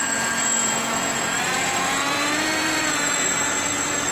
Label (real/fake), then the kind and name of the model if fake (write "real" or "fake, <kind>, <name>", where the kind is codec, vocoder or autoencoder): fake, vocoder, Vocos